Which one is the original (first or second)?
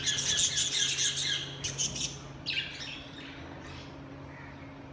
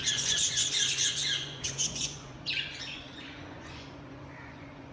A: first